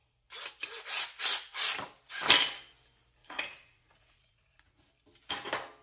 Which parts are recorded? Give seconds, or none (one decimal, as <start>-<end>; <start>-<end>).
0.0-3.2; 4.8-5.8